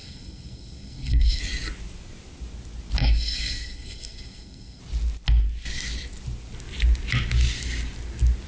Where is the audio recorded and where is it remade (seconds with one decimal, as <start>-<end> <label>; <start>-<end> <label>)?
0.0-1.4 remade; 1.4-3.0 recorded; 3.0-4.8 remade; 4.8-8.5 recorded